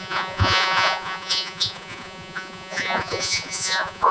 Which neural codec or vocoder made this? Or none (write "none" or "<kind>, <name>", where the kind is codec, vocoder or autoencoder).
vocoder, Vocos